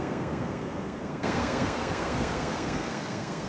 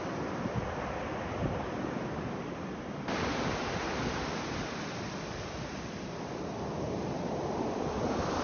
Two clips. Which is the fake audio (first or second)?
first